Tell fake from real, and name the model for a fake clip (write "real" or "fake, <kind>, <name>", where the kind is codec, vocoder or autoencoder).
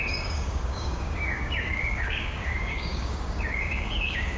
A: fake, codec, DAC